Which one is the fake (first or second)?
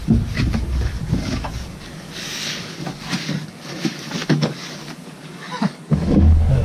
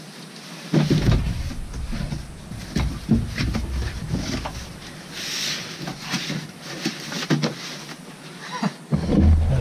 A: first